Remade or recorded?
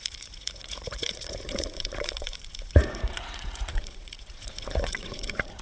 remade